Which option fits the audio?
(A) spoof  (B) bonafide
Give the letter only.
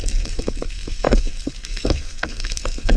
A